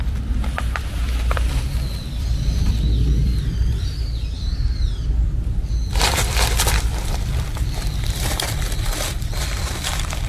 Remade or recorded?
remade